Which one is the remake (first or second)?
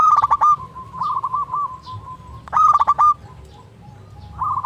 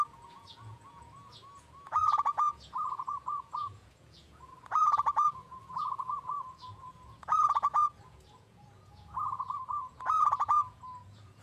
second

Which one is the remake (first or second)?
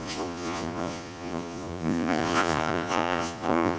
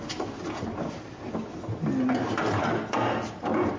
first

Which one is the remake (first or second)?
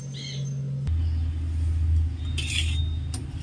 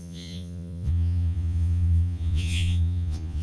second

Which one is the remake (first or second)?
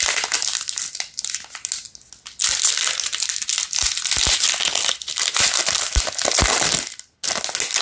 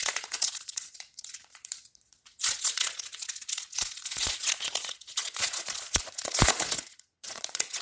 second